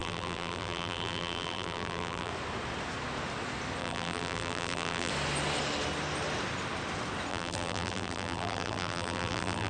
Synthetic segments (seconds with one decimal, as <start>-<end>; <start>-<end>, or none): 0.0-2.3; 3.8-5.1; 7.3-9.7